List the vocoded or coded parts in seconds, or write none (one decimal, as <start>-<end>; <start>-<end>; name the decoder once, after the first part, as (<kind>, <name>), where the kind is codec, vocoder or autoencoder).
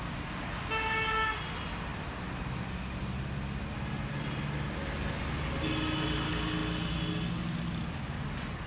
none